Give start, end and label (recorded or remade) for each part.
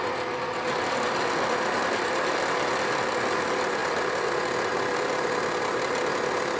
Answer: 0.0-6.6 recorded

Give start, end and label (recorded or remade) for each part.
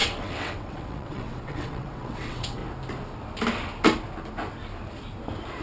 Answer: 0.0-2.6 remade; 2.6-5.6 recorded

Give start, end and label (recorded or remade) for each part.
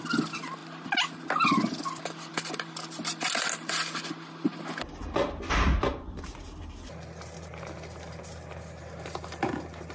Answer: 0.0-2.3 recorded; 2.3-3.4 remade; 3.4-9.9 recorded